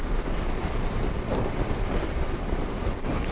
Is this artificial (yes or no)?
yes